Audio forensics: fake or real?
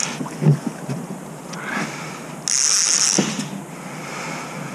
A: real